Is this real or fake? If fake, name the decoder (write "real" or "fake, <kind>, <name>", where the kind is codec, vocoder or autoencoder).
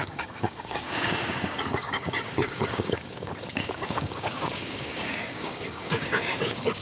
fake, codec, DAC